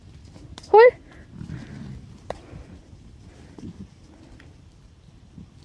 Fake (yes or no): no